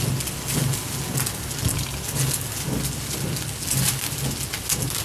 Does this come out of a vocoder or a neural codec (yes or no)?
no